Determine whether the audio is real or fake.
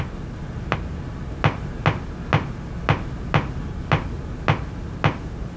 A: real